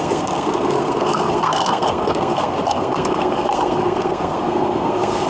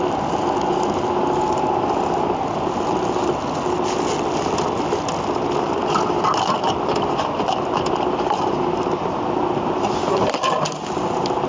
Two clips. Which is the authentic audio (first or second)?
second